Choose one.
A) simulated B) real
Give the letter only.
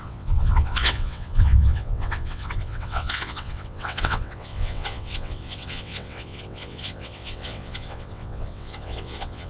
A